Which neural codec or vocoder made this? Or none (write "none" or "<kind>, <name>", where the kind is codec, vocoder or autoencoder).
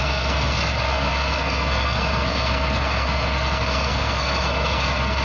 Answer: codec, SNAC